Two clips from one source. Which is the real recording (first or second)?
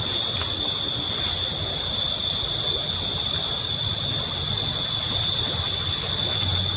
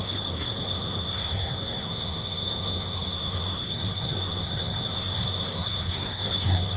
first